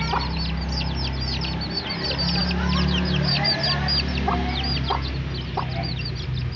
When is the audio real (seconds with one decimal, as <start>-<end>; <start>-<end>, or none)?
0.0-6.6